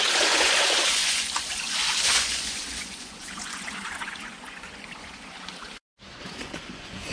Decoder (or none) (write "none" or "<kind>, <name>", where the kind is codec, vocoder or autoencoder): vocoder, Vocos